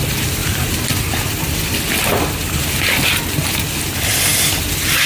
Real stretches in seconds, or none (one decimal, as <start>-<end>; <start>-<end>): 0.0-5.1